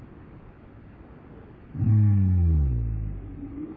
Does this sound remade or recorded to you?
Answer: recorded